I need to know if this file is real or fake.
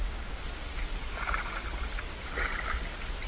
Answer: real